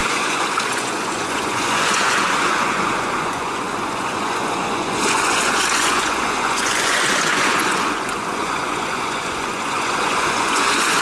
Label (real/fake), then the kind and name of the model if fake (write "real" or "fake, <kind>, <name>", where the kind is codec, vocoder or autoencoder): fake, vocoder, Vocos